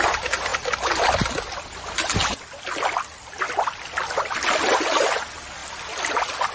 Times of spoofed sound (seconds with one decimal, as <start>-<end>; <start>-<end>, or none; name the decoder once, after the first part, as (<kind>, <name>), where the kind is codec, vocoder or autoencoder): none